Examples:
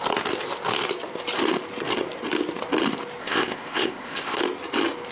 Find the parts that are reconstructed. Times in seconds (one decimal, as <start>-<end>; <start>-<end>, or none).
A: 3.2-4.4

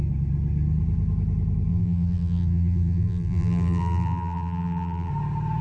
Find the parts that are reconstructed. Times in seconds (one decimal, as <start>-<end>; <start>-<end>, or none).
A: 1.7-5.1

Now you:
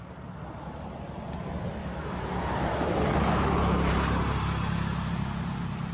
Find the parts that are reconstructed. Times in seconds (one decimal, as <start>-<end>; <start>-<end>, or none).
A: 1.8-3.9

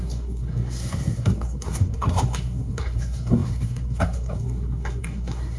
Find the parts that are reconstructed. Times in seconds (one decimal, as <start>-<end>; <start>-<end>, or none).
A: 0.0-5.6

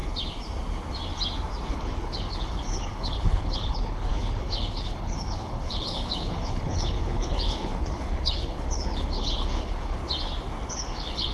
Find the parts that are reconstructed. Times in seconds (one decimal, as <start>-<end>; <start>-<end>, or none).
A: 1.7-10.0; 10.7-11.3